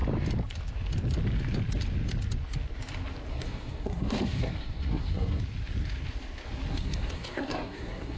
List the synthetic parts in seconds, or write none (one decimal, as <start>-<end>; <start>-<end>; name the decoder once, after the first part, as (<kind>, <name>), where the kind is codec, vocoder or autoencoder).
3.3-5.4 (codec, SNAC); 6.7-8.2